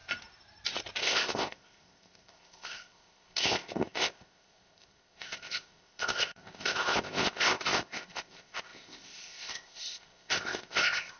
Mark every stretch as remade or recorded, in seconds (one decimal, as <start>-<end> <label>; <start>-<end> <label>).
0.0-1.0 recorded; 1.0-11.2 remade